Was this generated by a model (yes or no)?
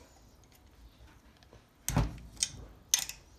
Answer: no